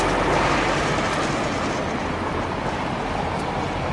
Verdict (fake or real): real